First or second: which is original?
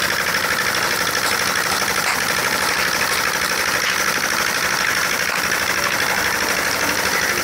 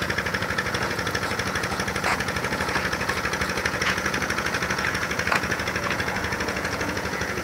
first